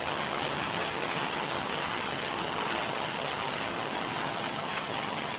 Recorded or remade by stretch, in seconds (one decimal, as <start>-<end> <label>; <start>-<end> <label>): 0.0-5.4 remade